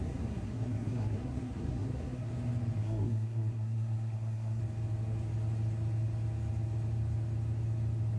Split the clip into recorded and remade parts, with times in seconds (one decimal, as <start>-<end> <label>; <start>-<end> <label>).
0.0-2.3 remade; 2.3-2.8 recorded; 2.8-4.6 remade; 4.6-8.2 recorded